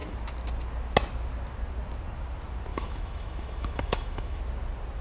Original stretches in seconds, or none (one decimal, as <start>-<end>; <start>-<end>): 0.0-2.7; 4.4-5.0